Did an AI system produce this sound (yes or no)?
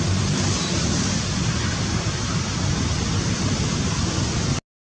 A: no